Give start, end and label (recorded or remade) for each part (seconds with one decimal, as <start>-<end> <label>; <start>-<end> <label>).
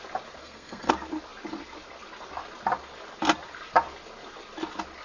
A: 0.0-0.4 recorded; 0.4-0.9 remade; 0.9-5.0 recorded